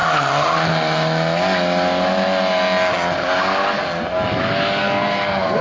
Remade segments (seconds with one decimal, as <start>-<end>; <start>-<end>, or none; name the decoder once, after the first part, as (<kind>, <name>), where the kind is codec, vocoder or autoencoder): 4.8-5.6 (codec, SNAC)